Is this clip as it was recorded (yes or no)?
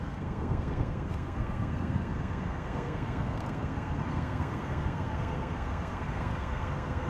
no